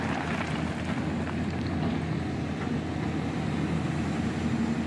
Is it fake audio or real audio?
real